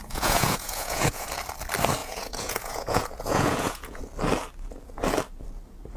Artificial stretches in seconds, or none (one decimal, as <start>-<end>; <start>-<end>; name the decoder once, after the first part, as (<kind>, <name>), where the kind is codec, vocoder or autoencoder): 0.0-1.3 (vocoder, Vocos); 2.0-4.0